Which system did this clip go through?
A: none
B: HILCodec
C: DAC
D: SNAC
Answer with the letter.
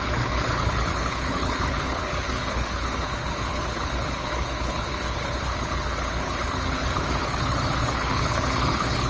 B